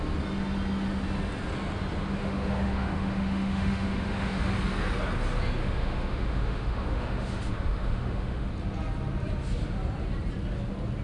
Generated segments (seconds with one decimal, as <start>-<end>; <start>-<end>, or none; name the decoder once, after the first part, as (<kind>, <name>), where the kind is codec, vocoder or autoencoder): 2.2-4.4 (autoencoder, DAC-VAE); 5.6-8.5